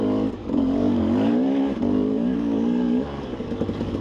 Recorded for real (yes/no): no